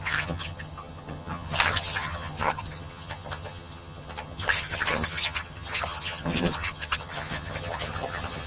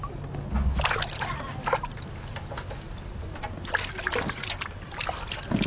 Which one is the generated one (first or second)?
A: first